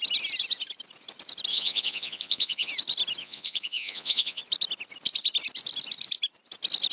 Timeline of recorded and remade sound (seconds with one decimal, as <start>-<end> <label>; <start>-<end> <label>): 0.0-1.5 recorded; 1.5-2.7 remade; 2.7-3.2 recorded; 3.2-4.4 remade; 4.4-6.9 recorded